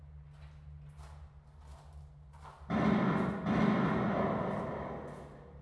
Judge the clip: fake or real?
real